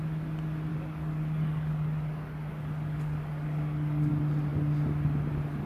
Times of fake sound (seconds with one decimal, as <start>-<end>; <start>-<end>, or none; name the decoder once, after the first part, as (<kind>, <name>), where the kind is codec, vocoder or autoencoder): 0.7-4.1 (codec, DAC)